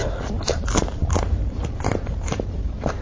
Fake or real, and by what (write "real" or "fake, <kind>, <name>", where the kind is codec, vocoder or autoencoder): fake, vocoder, BigVGAN v2